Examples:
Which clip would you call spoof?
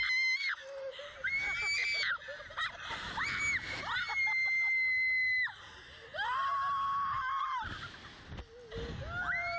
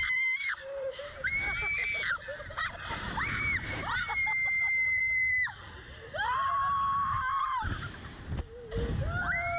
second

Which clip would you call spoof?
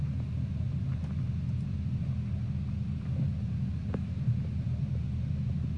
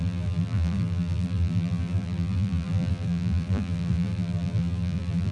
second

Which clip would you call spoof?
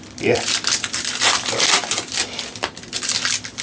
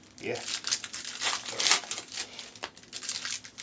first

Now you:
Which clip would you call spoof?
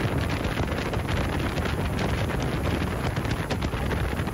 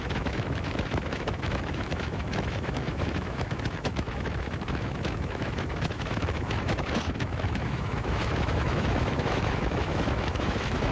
second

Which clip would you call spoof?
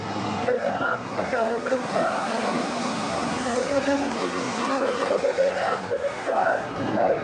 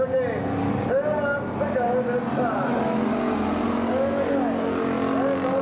first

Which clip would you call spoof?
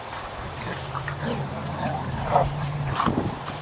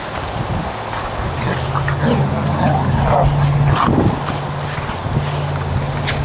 first